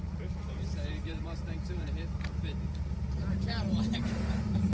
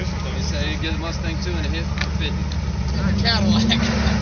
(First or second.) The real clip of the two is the second